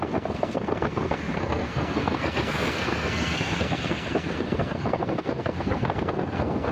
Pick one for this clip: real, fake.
fake